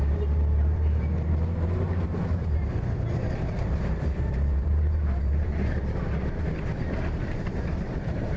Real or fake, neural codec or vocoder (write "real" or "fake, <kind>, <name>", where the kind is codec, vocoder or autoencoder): fake, vocoder, BigVGAN v2